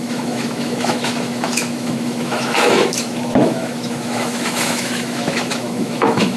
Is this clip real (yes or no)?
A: no